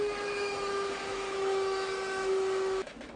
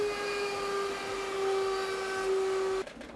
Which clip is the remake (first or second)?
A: first